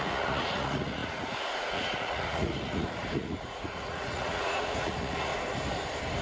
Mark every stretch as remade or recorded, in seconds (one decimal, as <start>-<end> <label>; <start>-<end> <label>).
0.0-5.3 remade; 5.3-6.2 recorded